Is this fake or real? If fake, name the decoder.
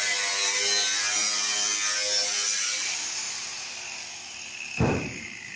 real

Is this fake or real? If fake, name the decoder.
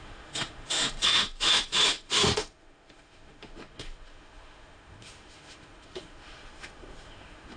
fake, autoencoder, DAC-VAE